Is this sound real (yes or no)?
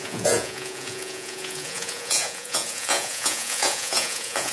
no